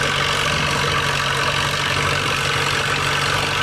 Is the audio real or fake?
real